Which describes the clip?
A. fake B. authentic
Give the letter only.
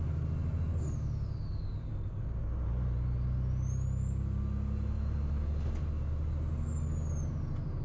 B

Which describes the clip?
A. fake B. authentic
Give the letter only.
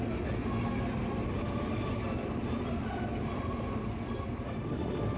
B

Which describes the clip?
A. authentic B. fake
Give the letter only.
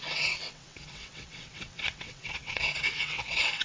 B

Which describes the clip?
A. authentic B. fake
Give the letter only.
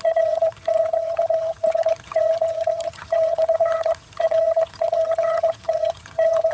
B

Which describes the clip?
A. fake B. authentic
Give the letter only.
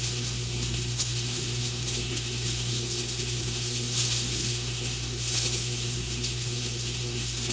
A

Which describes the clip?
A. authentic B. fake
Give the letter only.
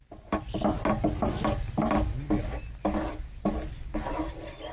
A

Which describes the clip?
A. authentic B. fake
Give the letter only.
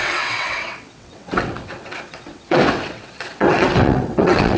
B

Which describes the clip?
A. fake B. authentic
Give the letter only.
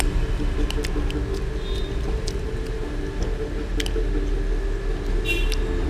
B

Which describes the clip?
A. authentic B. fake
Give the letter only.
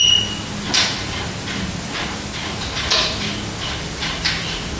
A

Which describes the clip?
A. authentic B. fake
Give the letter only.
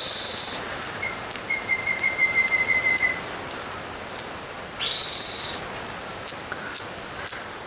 A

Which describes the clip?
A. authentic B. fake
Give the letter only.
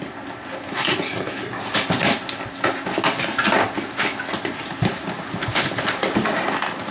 A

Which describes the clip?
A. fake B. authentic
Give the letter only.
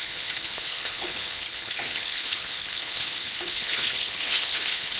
A